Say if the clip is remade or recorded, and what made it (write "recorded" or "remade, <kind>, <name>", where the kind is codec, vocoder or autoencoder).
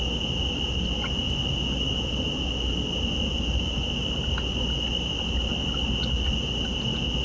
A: recorded